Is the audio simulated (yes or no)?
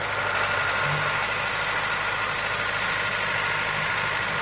no